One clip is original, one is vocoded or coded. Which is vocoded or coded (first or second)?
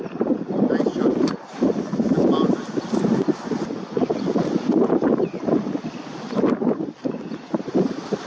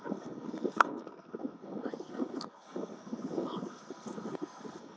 second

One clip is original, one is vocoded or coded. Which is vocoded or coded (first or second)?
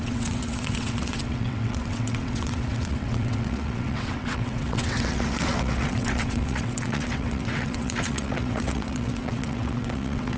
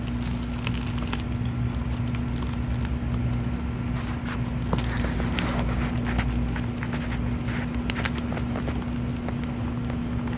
first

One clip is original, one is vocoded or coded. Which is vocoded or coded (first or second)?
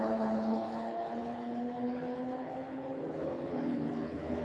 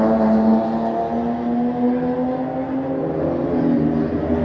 first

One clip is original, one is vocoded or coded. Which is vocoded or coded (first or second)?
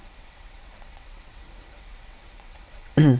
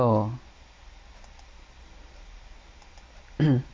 first